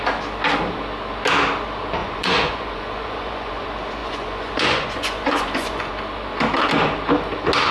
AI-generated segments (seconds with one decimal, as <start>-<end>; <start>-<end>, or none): 2.0-3.6; 4.0-5.9

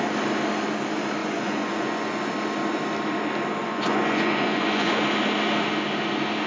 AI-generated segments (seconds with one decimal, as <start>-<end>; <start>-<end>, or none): 1.2-2.3; 3.6-5.0

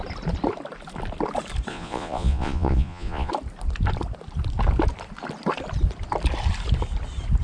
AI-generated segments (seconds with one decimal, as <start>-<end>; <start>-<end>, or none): 1.7-3.3